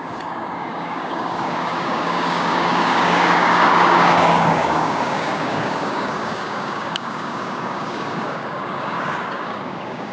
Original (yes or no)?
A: no